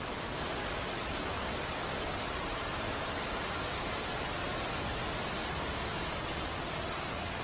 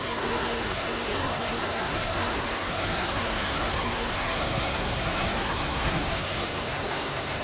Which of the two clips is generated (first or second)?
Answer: second